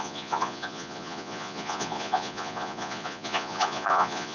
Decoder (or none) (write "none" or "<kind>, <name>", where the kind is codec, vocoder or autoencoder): vocoder, Vocos